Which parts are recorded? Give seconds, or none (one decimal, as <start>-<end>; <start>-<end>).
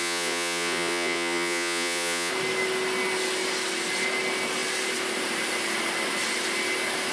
2.3-7.1